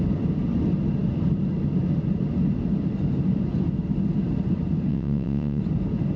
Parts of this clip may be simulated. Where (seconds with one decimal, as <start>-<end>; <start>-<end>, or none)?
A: 4.9-5.6